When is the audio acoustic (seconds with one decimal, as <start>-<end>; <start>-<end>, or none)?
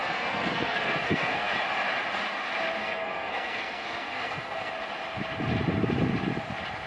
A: 1.5-2.8; 4.7-6.9